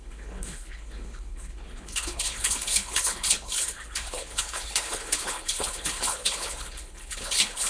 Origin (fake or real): fake